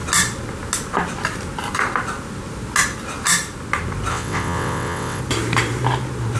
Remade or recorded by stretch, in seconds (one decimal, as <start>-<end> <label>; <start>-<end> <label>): 0.0-4.1 recorded; 4.1-5.2 remade; 5.2-6.4 recorded